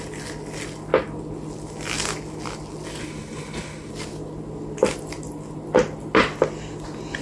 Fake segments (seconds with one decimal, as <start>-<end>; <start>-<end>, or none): 3.0-3.9